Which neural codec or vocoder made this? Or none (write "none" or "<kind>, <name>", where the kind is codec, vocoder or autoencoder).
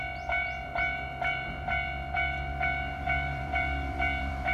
vocoder, BigVGAN v2